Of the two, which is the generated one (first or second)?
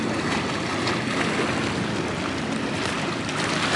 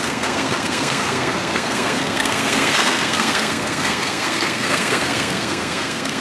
second